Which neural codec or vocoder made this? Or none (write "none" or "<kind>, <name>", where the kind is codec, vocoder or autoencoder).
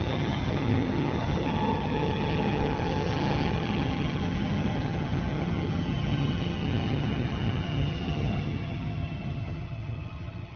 vocoder, HiFi-GAN